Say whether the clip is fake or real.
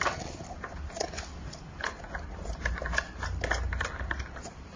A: real